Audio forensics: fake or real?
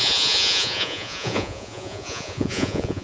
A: fake